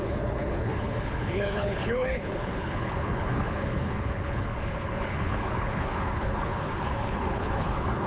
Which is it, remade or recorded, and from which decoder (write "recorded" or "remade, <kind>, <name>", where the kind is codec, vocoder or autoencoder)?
remade, codec, HILCodec